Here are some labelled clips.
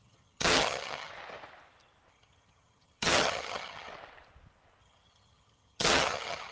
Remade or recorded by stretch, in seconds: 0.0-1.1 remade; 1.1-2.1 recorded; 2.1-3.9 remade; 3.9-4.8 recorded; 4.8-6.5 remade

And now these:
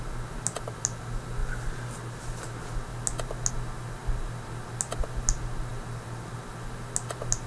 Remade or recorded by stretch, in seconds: 0.0-7.5 recorded

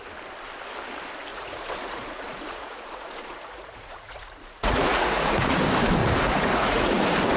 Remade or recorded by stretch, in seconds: 0.0-1.3 recorded; 1.3-5.6 remade; 5.6-6.0 recorded; 6.0-7.0 remade; 7.0-7.4 recorded

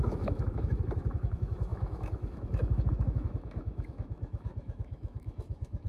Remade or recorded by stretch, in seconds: 0.0-5.9 remade

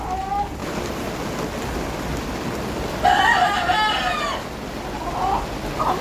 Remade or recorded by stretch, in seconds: 0.0-6.0 recorded